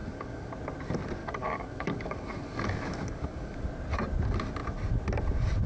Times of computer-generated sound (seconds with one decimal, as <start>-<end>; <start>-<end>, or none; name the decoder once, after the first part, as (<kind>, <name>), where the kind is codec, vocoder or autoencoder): 0.0-0.5 (codec, DAC); 1.2-3.7